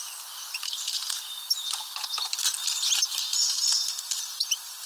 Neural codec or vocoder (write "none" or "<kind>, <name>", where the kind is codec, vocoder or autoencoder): vocoder, BigVGAN v2